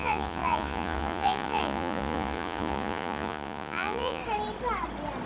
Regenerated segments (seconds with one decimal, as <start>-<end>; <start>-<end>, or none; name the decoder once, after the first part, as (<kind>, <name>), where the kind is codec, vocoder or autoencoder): 0.0-4.2 (vocoder, Vocos)